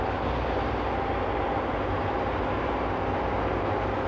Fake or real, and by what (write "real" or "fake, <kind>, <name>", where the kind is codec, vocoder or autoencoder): real